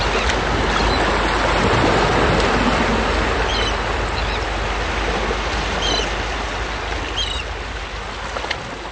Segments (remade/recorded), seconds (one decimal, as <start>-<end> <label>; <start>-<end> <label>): 0.0-8.9 recorded